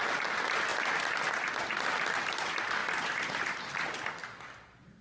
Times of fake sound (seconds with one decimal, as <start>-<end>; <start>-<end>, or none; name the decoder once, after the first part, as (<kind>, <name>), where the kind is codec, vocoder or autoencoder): none